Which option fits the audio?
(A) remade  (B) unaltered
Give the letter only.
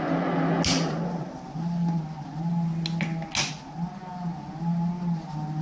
B